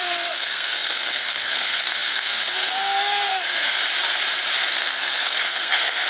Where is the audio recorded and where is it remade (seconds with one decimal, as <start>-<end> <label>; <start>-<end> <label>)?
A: 0.0-3.8 remade; 3.8-4.7 recorded; 4.7-6.1 remade